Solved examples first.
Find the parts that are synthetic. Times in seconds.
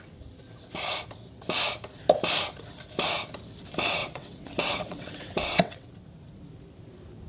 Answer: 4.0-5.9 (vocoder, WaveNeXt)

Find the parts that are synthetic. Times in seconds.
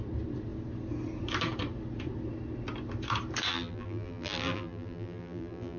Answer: 3.5-5.8 (vocoder, BigVGAN v2)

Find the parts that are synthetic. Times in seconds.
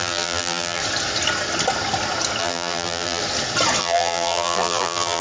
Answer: 0.0-0.8 (vocoder, BigVGAN v2); 2.4-3.2; 3.8-5.2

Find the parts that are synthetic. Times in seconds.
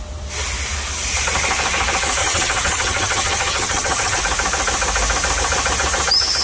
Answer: 2.2-4.2 (vocoder, HiFi-GAN)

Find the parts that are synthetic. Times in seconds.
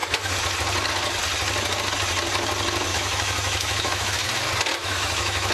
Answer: 2.9-4.3 (autoencoder, DAC-VAE); 4.8-5.5